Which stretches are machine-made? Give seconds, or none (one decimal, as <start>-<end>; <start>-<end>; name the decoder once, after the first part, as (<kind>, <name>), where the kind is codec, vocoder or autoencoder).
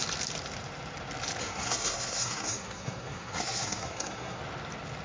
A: 1.4-4.4 (codec, SNAC)